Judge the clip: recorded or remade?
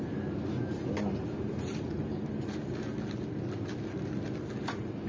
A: recorded